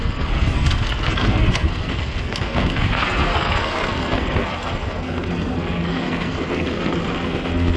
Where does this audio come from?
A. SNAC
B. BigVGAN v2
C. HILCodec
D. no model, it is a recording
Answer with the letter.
A